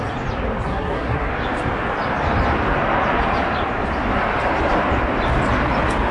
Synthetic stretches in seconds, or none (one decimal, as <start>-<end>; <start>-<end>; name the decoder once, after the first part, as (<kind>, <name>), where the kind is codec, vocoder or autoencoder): 0.7-1.3 (codec, SNAC)